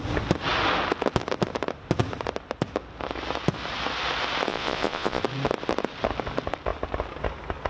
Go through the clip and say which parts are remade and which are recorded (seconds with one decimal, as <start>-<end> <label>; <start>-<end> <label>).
0.0-4.5 recorded; 4.5-5.2 remade; 5.2-7.7 recorded